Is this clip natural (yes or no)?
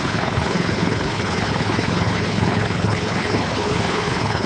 no